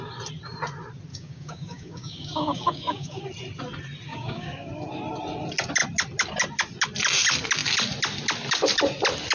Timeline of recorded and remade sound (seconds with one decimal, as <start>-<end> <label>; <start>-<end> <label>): 0.0-1.1 recorded; 1.1-3.2 remade; 3.2-4.1 recorded; 4.1-4.7 remade; 4.7-9.3 recorded